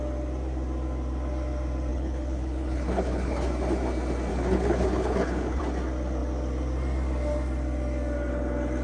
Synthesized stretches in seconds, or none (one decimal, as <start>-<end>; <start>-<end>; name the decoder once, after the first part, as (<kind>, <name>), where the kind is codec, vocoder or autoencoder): 1.9-3.5 (codec, HILCodec); 4.3-5.6